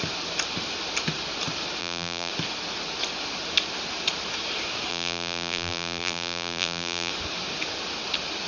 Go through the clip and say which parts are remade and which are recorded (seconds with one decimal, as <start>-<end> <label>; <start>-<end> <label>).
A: 0.0-1.8 recorded; 1.8-2.3 remade; 2.3-4.9 recorded; 4.9-7.1 remade; 7.1-8.5 recorded